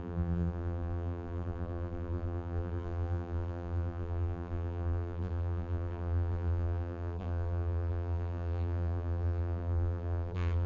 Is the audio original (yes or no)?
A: no